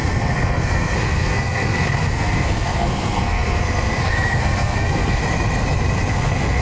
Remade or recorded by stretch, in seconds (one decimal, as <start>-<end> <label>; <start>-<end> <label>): 0.0-5.2 remade; 5.2-6.1 recorded; 6.1-6.6 remade